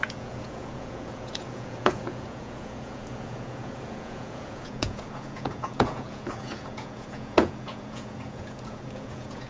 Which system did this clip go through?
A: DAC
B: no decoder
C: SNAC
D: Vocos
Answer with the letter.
D